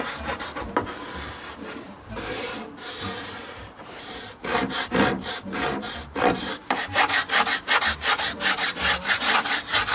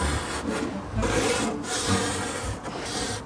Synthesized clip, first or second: first